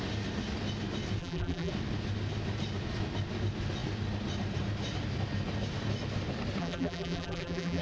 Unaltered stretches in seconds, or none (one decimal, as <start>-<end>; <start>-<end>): 0.0-1.2; 1.7-6.6